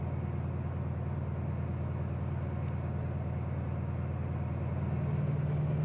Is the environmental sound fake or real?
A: real